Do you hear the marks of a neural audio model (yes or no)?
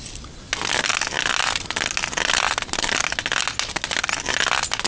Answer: no